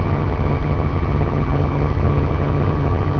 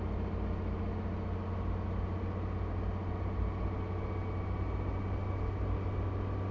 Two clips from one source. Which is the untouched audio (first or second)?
second